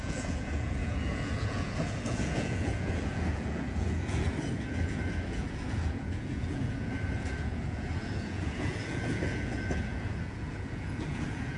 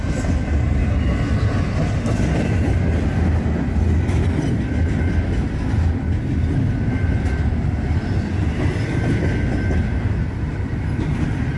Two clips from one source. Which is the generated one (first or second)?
first